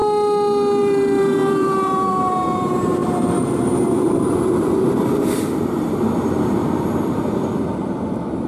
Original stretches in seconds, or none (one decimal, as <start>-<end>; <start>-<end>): 0.0-0.8